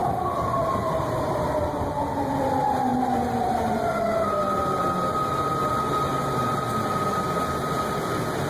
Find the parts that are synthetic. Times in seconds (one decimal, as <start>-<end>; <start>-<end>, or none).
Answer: none